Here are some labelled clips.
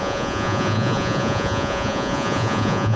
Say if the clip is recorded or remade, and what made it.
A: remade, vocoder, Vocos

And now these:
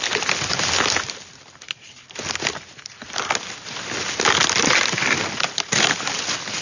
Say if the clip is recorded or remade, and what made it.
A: recorded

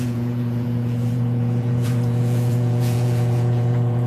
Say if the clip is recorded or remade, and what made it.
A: remade, vocoder, Vocos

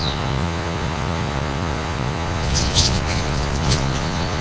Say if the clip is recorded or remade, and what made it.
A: remade, vocoder, Vocos